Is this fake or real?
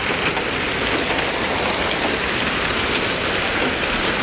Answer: real